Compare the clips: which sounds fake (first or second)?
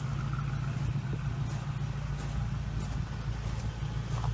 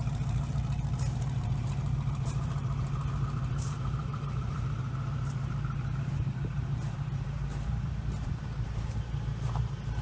second